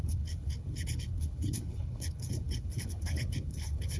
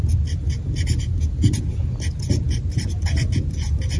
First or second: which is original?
second